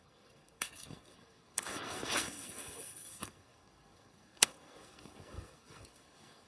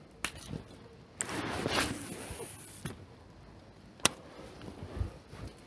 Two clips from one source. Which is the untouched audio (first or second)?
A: second